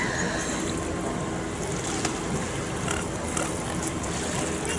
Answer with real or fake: real